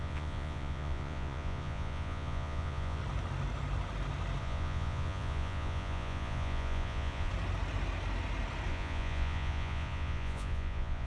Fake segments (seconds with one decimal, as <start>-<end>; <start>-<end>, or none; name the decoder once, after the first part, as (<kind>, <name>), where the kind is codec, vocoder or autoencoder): 0.0-3.0 (vocoder, Vocos); 4.4-7.3; 8.7-11.1